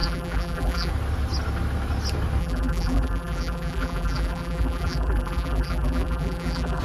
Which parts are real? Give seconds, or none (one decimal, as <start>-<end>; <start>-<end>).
0.9-2.4